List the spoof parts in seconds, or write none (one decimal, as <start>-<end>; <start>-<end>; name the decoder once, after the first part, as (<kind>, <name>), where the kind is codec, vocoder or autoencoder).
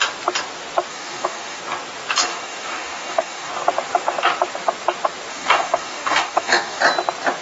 0.9-1.6 (codec, DAC); 2.3-3.5; 5.3-6.8